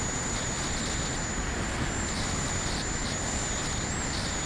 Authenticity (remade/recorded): recorded